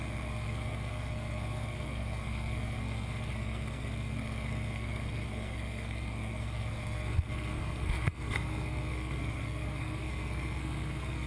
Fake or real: fake